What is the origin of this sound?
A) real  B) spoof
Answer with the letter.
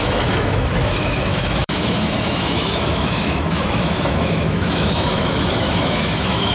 B